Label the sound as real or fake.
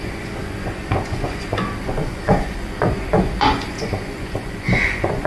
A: fake